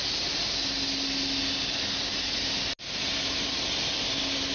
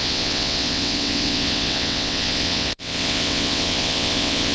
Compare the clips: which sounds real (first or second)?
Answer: first